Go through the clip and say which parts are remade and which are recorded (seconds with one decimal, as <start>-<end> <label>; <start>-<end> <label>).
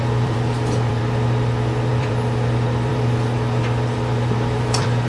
0.0-5.1 remade